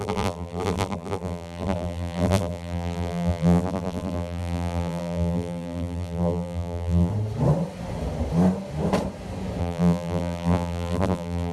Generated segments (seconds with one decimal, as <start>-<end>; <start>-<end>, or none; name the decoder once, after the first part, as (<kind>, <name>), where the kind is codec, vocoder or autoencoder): 0.0-7.1 (vocoder, BigVGAN v2); 9.6-11.5